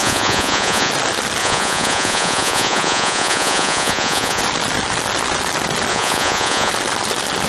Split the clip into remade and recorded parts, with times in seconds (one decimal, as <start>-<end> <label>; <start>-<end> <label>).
0.0-0.9 remade; 0.9-1.4 recorded; 1.4-4.4 remade; 4.4-5.9 recorded; 5.9-6.7 remade; 6.7-7.5 recorded